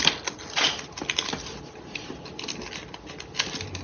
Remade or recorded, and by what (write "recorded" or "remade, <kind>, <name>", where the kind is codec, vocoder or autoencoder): recorded